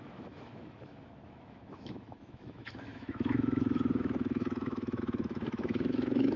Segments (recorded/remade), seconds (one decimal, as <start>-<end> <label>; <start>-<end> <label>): 0.0-6.4 remade